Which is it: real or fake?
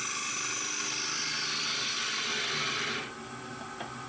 real